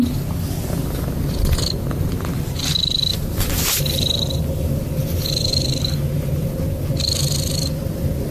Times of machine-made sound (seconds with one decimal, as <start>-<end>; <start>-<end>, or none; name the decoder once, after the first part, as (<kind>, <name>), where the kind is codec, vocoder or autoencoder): 3.1-5.5 (vocoder, BigVGAN v2)